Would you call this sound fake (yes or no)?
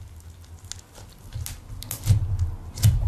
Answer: no